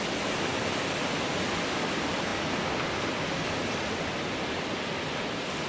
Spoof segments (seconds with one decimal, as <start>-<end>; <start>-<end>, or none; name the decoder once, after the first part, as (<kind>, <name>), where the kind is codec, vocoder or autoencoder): none